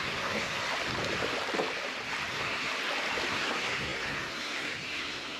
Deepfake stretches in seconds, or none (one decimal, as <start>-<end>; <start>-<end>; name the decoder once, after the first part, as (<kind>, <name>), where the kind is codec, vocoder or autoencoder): 0.0-0.6 (codec, SNAC); 2.3-2.7; 3.3-5.4